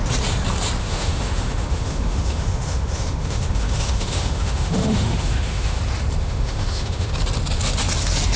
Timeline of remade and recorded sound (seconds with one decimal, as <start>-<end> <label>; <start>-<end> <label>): 0.0-0.8 recorded; 0.8-5.8 remade; 5.8-6.2 recorded; 6.2-7.1 remade; 7.1-8.4 recorded